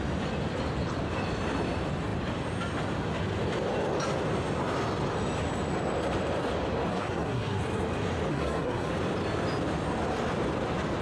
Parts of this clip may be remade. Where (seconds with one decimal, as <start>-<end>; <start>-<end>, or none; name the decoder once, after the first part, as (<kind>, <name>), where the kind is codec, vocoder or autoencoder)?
6.9-7.6 (codec, SNAC); 8.3-8.9